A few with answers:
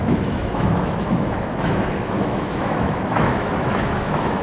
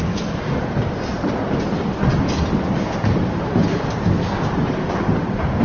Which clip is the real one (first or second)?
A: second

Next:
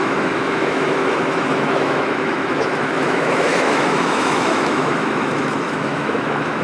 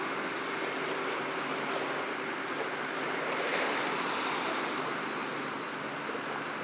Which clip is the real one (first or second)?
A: second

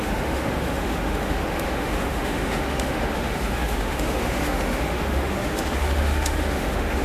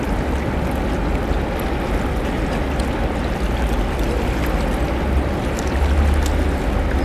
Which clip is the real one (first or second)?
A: second